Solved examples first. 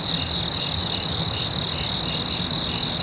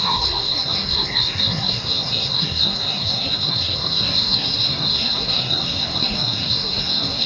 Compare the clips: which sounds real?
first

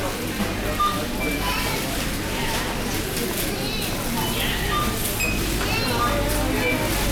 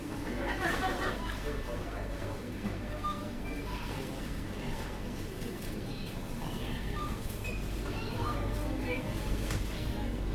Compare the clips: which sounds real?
first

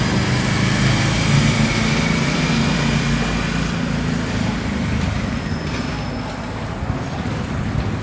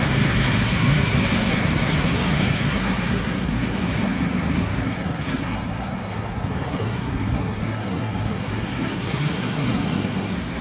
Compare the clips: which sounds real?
first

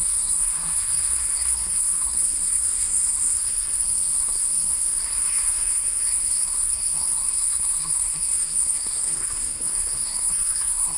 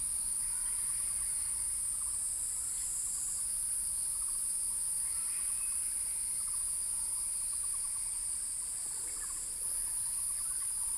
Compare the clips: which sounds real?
second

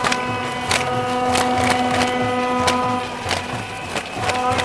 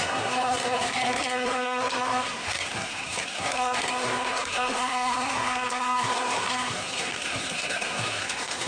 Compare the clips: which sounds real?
first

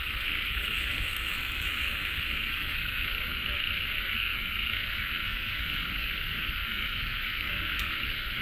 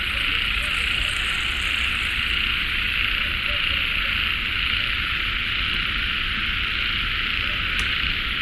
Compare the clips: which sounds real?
second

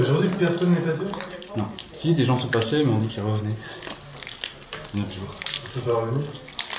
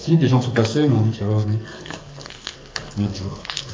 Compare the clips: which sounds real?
first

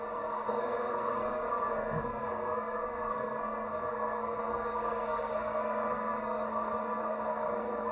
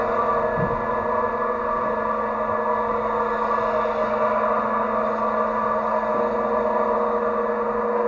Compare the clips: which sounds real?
second